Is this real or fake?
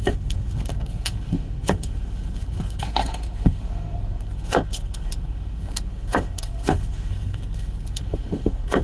fake